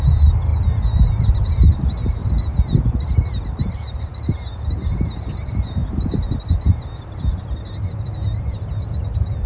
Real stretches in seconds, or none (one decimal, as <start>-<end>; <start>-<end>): 0.5-1.5; 2.2-3.6; 4.1-5.2